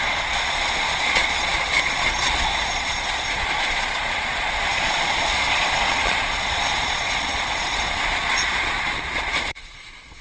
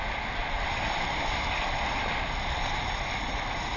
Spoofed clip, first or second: first